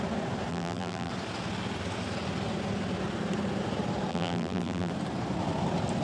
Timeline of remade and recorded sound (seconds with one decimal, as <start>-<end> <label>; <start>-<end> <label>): 0.0-0.5 recorded; 0.5-1.1 remade; 1.1-4.1 recorded; 4.1-4.9 remade; 4.9-6.0 recorded